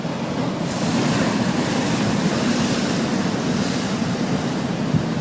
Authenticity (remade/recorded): remade